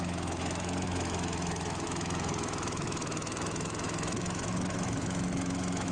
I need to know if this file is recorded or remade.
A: remade